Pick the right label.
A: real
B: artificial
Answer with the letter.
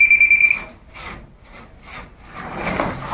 A